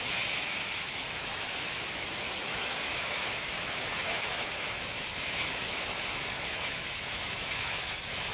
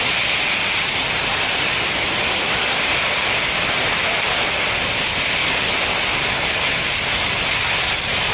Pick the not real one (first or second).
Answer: first